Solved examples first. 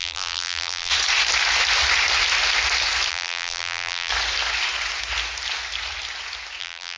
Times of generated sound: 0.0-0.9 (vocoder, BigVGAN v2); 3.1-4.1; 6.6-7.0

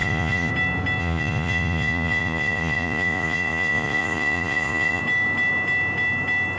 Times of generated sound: 0.0-0.5 (vocoder, Vocos); 1.0-5.0

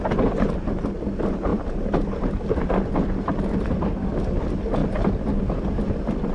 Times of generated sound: 1.5-2.7 (vocoder, BigVGAN v2); 3.3-4.3